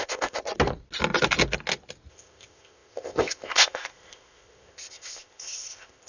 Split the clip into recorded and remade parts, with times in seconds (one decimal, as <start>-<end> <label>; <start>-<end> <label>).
0.0-0.4 remade; 0.4-2.1 recorded; 2.1-6.1 remade